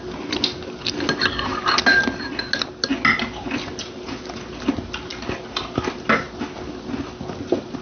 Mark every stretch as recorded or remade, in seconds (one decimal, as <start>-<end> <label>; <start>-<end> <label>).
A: 0.0-7.8 recorded